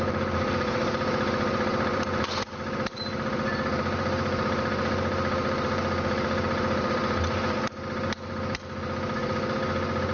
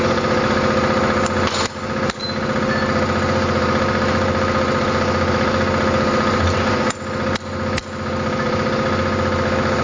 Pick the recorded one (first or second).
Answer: second